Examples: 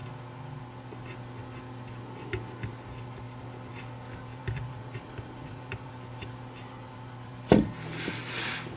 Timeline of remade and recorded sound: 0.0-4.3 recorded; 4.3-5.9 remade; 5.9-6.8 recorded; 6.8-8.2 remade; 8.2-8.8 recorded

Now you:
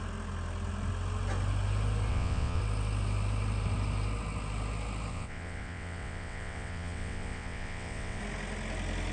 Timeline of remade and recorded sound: 0.0-2.1 recorded; 2.1-2.6 remade; 2.6-5.1 recorded; 5.1-8.2 remade; 8.2-9.1 recorded

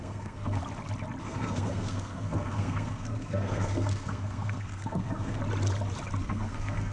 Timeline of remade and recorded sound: 0.0-0.6 remade; 0.6-1.2 recorded; 1.2-5.4 remade; 5.4-6.2 recorded; 6.2-6.9 remade

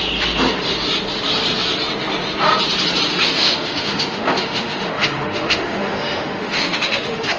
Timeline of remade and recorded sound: 0.0-3.1 recorded; 3.1-7.4 remade